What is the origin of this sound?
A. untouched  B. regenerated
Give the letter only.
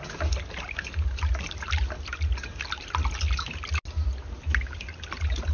A